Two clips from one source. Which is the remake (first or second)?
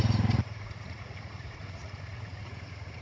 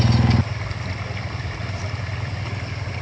first